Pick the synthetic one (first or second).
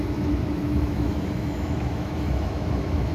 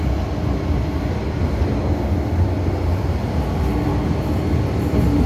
first